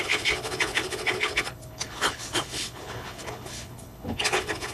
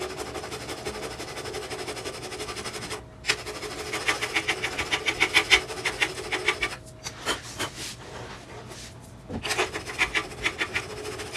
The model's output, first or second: first